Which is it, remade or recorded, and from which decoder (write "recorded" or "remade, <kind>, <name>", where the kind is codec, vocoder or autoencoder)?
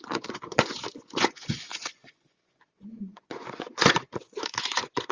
remade, vocoder, Vocos